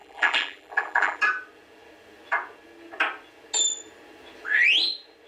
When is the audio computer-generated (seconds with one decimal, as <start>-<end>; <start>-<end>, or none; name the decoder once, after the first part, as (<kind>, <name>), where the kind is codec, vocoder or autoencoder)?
0.0-1.2 (vocoder, BigVGAN v2)